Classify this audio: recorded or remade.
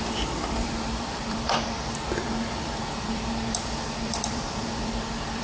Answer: remade